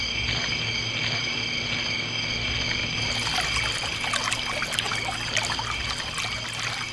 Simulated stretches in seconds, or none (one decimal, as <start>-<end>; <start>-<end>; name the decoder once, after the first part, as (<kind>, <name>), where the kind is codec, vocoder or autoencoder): none